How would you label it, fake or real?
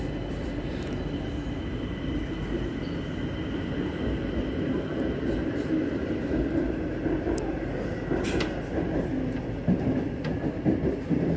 real